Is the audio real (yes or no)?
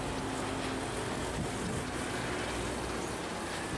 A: yes